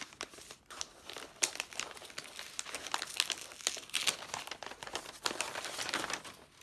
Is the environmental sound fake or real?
real